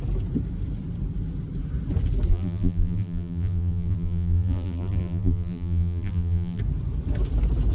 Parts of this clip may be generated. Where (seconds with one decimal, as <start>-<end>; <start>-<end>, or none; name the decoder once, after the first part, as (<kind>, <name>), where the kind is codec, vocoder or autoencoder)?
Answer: 2.3-6.6 (vocoder, BigVGAN v2)